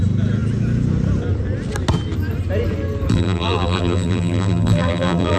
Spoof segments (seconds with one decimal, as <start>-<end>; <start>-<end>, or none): 3.1-5.4